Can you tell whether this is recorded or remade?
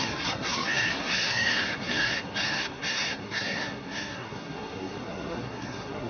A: remade